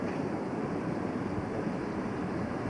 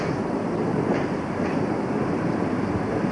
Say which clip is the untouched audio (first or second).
second